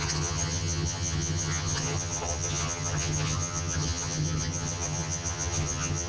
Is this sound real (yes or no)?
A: no